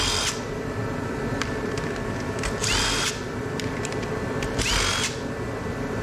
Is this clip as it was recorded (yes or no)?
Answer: no